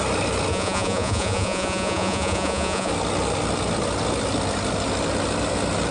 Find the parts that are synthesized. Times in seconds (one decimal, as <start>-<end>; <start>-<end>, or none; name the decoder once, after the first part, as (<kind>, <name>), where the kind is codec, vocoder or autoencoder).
0.5-2.9 (vocoder, Vocos)